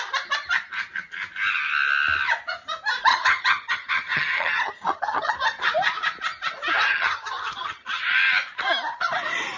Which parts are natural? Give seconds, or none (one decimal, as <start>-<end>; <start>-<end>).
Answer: 0.0-3.1; 5.3-6.9; 8.0-9.6